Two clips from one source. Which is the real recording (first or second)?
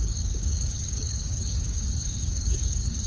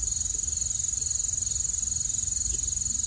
second